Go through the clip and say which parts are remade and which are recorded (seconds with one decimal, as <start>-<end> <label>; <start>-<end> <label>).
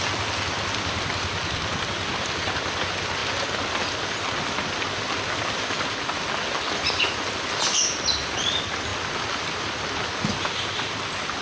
0.0-11.4 recorded